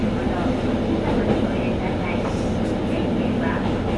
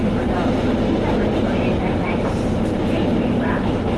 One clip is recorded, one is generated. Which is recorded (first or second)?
first